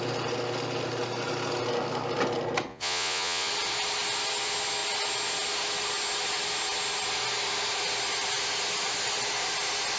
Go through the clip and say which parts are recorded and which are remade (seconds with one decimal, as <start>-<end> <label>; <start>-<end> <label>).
0.0-2.7 recorded; 2.7-3.5 remade; 3.5-10.0 recorded